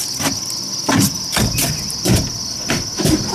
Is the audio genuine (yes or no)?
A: yes